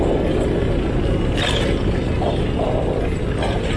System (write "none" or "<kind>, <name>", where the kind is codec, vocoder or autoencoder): none